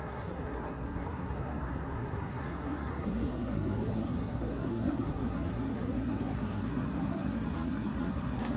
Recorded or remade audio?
remade